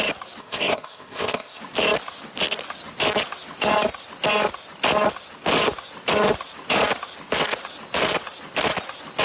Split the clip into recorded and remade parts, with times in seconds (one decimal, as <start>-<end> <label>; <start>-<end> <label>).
0.0-0.4 recorded; 0.4-1.6 remade; 1.6-9.2 recorded